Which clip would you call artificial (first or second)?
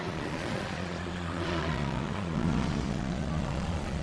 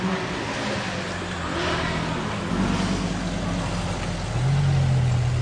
first